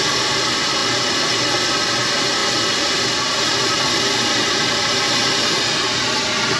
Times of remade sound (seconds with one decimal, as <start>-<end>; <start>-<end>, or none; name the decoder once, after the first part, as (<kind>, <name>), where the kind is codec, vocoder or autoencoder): none